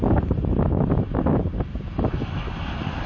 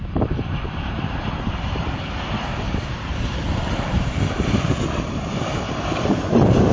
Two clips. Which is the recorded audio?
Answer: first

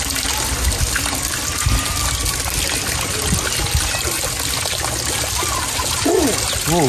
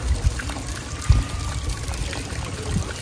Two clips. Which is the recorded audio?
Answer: first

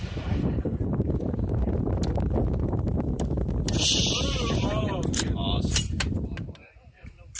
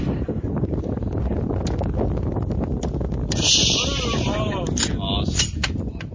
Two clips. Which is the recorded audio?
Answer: second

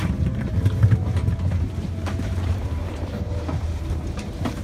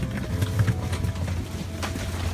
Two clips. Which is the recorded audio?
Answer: second